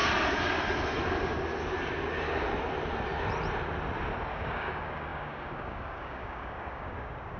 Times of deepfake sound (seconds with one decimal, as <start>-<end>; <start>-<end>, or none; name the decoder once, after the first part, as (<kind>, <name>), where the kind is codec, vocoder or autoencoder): 4.3-7.4 (codec, DAC)